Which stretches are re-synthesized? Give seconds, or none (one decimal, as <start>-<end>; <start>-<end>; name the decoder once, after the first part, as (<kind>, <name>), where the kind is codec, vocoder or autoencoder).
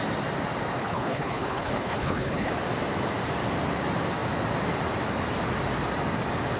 0.8-2.5 (codec, HILCodec)